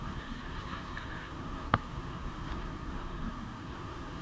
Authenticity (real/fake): fake